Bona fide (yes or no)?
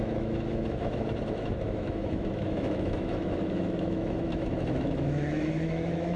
no